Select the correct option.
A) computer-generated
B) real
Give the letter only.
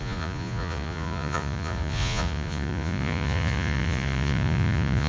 A